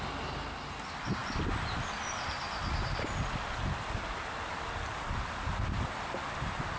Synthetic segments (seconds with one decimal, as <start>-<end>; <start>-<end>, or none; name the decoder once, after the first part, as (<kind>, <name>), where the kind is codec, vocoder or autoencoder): none